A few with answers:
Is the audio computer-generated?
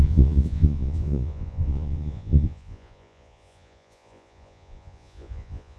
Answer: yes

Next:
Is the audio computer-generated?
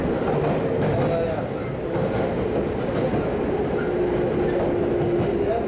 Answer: no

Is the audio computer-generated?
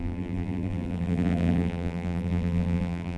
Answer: yes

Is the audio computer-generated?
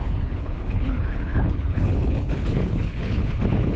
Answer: yes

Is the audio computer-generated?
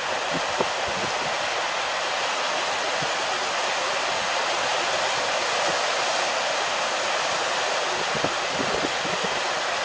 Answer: no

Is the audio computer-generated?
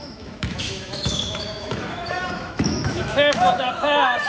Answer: yes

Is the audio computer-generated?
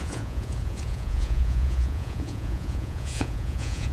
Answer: yes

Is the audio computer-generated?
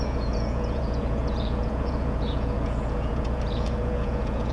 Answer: yes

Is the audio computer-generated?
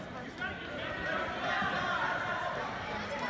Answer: no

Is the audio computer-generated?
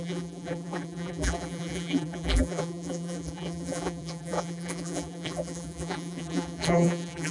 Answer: yes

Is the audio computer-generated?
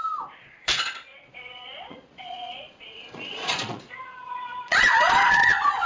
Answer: yes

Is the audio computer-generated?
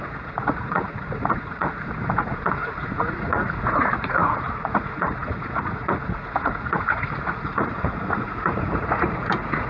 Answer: yes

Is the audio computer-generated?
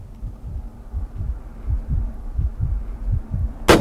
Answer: no